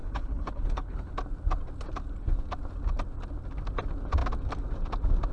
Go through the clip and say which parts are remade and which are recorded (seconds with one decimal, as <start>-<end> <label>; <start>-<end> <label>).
0.0-1.1 remade; 1.1-5.3 recorded